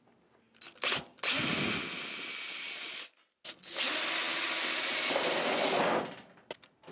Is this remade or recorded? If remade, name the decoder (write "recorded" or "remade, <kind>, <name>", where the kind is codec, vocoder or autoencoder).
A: recorded